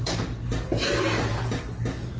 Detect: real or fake real